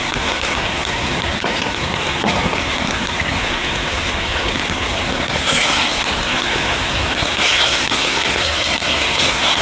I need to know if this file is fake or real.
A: fake